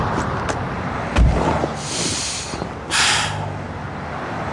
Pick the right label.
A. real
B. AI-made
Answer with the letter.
A